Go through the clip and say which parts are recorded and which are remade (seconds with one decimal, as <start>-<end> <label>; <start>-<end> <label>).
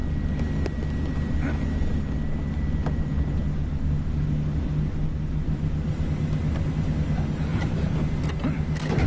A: 0.0-7.5 recorded; 7.5-8.0 remade; 8.0-9.1 recorded